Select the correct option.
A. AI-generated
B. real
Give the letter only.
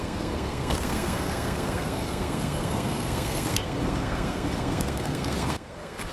A